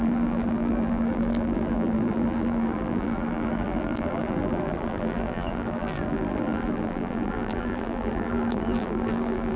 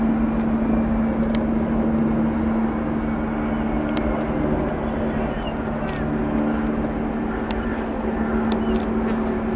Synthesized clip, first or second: first